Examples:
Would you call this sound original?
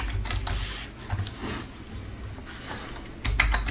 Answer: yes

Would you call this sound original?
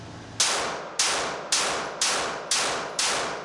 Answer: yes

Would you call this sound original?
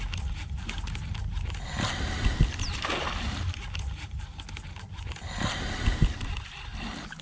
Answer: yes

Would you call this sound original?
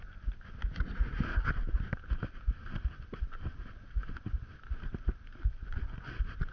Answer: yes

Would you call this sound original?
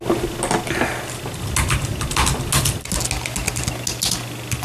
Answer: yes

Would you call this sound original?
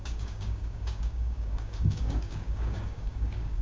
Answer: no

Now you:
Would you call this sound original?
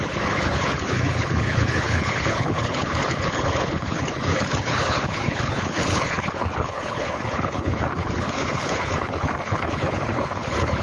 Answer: no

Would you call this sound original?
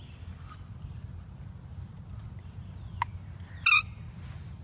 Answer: yes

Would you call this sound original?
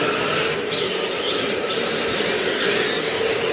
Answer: yes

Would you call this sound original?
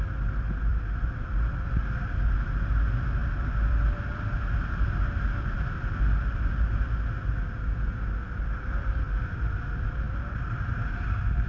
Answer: yes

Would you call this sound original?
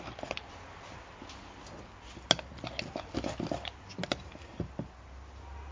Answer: yes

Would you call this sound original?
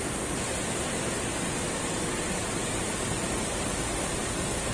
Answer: yes